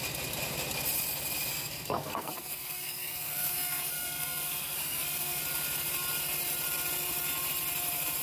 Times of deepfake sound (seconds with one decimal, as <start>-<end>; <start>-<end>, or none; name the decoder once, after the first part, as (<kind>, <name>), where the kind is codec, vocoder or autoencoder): 1.5-5.4 (codec, SNAC)